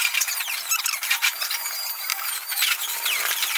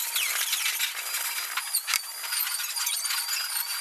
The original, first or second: second